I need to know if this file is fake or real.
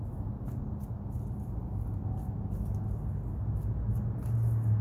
real